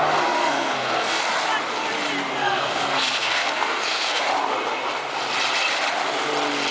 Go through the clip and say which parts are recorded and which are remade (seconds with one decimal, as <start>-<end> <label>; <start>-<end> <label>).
0.0-0.4 recorded; 0.4-1.2 remade; 1.2-2.4 recorded; 2.4-4.2 remade; 4.2-6.7 recorded

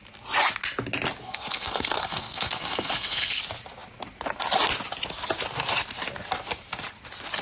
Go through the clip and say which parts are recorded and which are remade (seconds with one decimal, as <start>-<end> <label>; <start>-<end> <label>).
0.0-1.2 recorded; 1.2-3.4 remade; 3.4-7.4 recorded

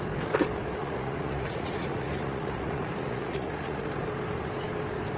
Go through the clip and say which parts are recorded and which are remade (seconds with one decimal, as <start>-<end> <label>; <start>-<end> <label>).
0.0-0.8 recorded; 0.8-3.9 remade; 3.9-5.2 recorded

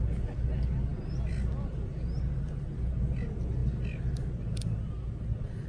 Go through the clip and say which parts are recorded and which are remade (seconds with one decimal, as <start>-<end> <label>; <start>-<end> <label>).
0.0-5.7 recorded

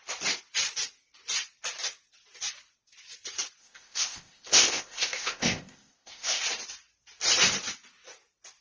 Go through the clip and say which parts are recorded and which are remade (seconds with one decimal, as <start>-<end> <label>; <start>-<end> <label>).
0.0-3.6 recorded; 3.6-6.4 remade; 6.4-8.6 recorded

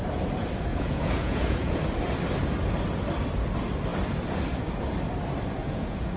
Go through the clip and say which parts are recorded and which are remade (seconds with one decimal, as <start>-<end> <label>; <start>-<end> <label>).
0.0-0.7 recorded; 0.7-1.8 remade; 1.8-5.6 recorded; 5.6-6.2 remade

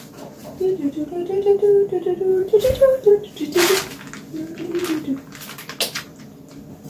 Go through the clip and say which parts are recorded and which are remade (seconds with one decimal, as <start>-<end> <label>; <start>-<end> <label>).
0.0-2.3 recorded; 2.3-3.1 remade; 3.1-6.9 recorded

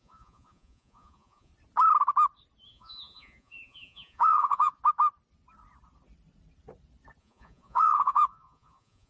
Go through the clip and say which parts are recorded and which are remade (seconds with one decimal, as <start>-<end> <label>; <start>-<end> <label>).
0.0-1.5 remade; 1.5-2.7 recorded; 2.7-4.8 remade; 4.8-7.2 recorded; 7.2-9.1 remade